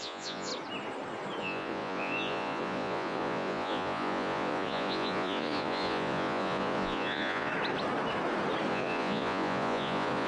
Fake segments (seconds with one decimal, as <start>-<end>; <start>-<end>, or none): 0.0-0.5; 1.4-7.5; 8.7-10.3